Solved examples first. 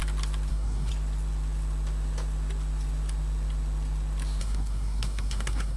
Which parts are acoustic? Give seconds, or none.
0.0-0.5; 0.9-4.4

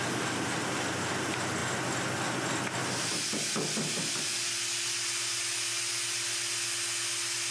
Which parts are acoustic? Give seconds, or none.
0.0-7.5

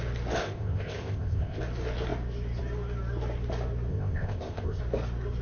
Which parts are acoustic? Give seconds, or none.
0.0-0.4; 1.6-3.9; 4.8-5.4

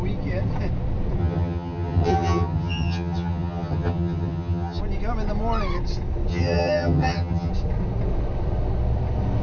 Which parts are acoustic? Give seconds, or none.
0.0-1.2; 4.8-6.3; 7.5-9.4

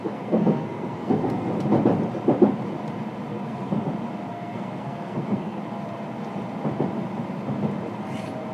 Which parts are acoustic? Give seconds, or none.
1.5-3.3; 3.9-4.3; 5.6-8.5